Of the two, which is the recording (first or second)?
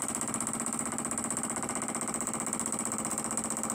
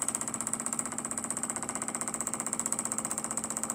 first